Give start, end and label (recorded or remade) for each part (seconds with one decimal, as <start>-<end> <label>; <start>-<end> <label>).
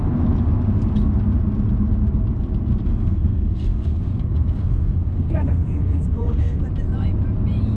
0.0-2.9 recorded; 2.9-6.6 remade; 6.6-7.8 recorded